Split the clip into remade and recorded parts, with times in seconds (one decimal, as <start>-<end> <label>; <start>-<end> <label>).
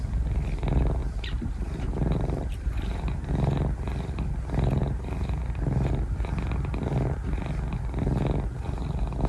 0.0-1.0 recorded; 1.0-3.3 remade; 3.3-4.8 recorded; 4.8-5.9 remade; 5.9-9.3 recorded